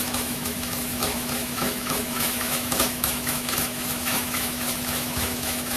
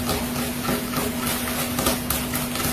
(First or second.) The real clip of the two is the second